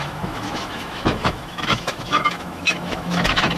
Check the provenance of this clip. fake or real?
fake